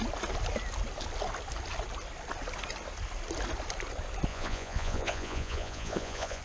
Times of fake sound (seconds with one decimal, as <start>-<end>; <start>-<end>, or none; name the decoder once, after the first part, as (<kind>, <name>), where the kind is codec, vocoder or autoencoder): 4.3-6.4 (vocoder, Vocos)